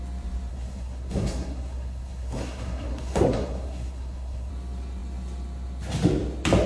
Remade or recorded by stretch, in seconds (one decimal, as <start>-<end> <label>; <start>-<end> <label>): 0.0-0.5 recorded; 0.5-4.5 remade; 4.5-6.7 recorded